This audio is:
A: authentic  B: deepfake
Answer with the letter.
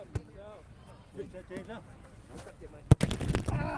A